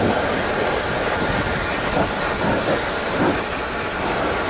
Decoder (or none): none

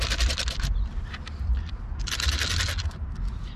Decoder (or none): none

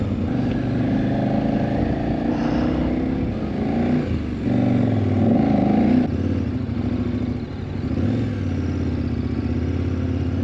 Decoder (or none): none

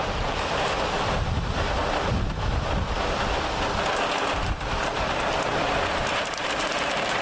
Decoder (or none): none